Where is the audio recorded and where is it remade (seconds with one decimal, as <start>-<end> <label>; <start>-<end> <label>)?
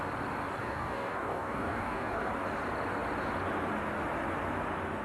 0.0-0.6 recorded; 0.6-2.3 remade; 2.3-5.0 recorded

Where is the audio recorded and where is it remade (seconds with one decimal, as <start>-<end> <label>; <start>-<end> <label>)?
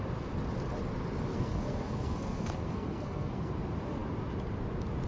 0.0-1.3 recorded; 1.3-3.5 remade; 3.5-5.1 recorded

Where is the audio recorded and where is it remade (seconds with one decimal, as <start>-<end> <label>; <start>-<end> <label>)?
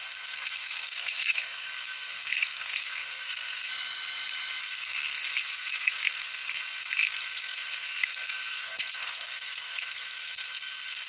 0.0-3.7 remade; 3.7-4.6 recorded; 4.6-11.1 remade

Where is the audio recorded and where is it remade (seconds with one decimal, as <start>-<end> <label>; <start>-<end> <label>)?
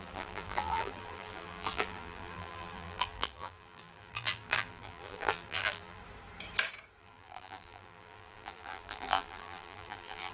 0.0-6.0 remade; 6.0-7.0 recorded; 7.0-10.3 remade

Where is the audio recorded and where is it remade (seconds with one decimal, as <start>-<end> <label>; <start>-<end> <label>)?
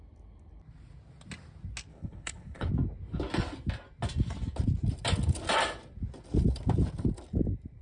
0.0-1.9 recorded; 1.9-2.7 remade; 2.7-7.8 recorded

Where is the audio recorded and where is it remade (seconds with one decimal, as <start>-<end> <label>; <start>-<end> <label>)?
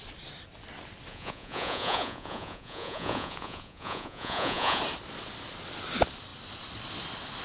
0.0-1.1 recorded; 1.1-4.8 remade; 4.8-7.4 recorded